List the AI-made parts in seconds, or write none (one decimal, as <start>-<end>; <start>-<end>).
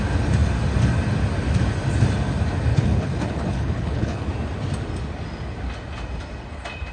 2.7-4.3